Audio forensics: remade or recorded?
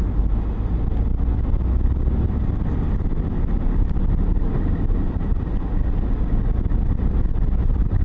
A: recorded